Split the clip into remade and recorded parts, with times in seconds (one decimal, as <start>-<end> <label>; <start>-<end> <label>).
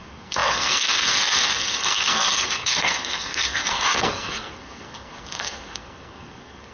0.0-6.7 remade